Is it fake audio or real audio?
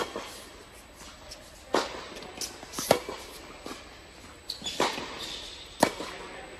real